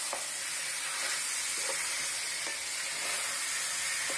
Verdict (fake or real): real